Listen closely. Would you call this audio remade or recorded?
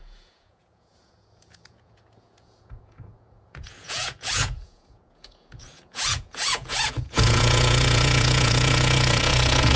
remade